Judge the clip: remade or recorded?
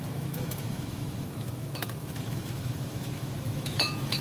remade